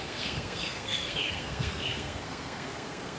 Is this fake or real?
fake